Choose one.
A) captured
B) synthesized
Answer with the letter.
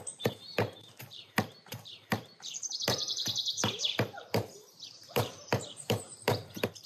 B